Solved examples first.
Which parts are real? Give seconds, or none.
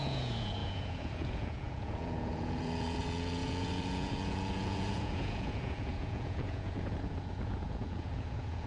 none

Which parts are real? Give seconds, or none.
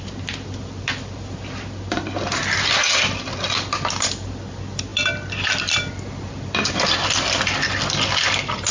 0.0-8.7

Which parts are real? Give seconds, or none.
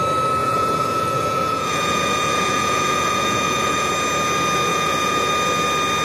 0.0-0.4; 3.9-4.7; 5.3-6.0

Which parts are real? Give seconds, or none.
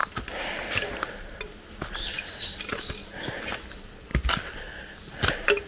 0.0-5.7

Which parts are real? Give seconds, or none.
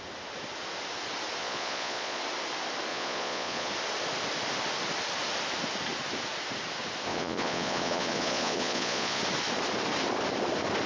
0.0-1.4; 2.2-2.9; 3.7-7.1; 9.2-10.9